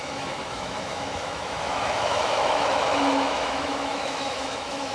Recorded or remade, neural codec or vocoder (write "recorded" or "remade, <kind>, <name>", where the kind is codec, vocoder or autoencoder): remade, autoencoder, DAC-VAE